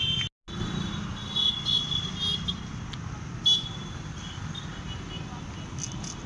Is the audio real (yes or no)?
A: yes